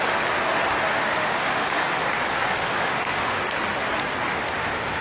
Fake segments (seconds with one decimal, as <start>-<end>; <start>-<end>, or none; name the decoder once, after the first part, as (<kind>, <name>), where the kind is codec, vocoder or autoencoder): 1.1-1.8 (autoencoder, DAC-VAE); 2.6-3.4; 4.3-5.0